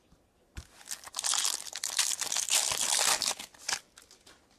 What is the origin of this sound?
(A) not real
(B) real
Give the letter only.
B